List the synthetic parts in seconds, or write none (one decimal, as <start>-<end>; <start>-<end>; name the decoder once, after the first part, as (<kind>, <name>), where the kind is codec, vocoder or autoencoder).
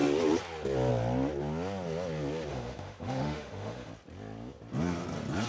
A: 2.5-3.9 (autoencoder, DAC-VAE)